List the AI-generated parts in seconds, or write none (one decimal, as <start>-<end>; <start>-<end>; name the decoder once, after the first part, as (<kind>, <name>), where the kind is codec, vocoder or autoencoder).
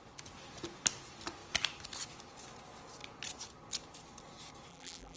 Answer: 4.7-5.2 (vocoder, BigVGAN v2)